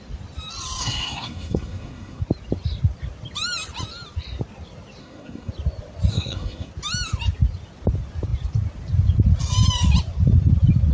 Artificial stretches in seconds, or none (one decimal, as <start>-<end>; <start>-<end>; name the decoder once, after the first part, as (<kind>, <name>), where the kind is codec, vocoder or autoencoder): 0.8-2.2 (codec, SNAC); 5.0-5.5; 6.1-6.7